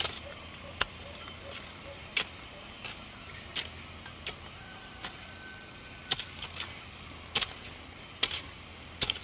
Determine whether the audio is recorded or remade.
recorded